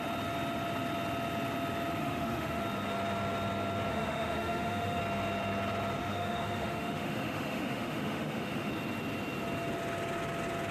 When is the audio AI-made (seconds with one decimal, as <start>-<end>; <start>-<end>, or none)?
2.0-2.6; 3.9-5.0; 6.0-8.7